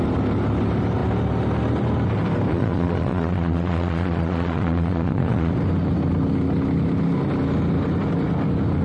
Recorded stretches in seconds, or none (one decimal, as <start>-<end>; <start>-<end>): 0.0-2.5; 5.5-8.8